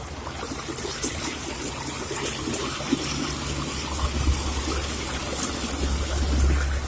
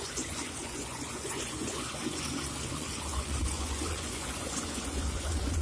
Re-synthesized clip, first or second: second